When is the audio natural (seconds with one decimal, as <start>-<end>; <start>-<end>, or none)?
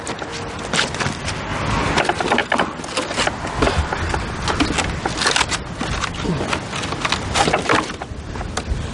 0.0-8.9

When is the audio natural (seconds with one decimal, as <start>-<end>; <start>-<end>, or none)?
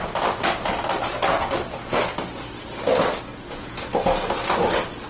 0.0-3.3; 3.9-5.1